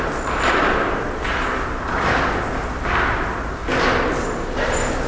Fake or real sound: real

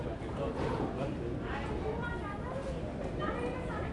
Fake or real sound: real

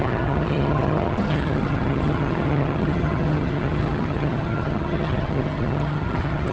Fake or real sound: fake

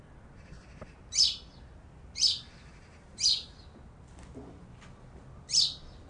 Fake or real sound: real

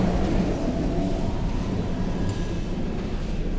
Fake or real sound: real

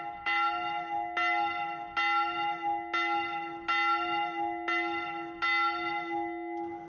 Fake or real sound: real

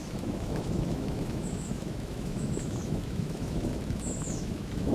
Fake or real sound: fake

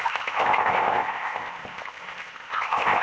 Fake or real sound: fake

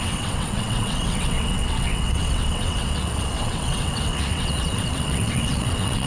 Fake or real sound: fake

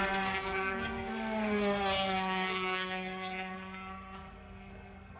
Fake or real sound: fake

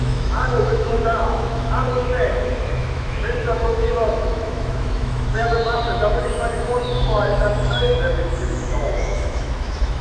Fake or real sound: fake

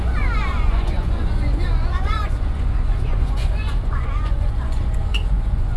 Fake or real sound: fake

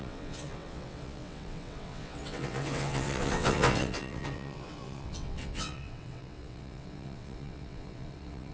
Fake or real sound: fake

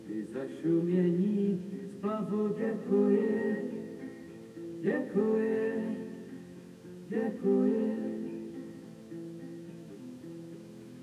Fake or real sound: fake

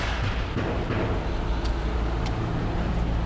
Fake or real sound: real